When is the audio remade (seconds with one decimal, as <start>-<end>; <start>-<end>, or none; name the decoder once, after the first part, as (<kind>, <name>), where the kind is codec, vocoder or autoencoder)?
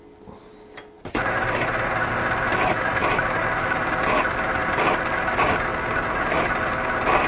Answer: none